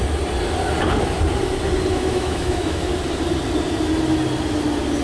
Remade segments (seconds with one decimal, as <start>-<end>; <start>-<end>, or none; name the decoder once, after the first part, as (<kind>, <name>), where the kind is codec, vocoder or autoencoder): 1.9-2.9 (autoencoder, DAC-VAE)